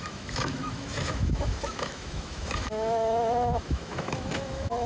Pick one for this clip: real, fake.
fake